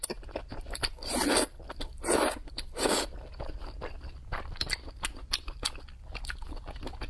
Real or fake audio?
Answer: real